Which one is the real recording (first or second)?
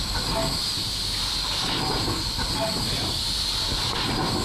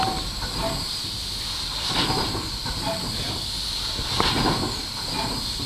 first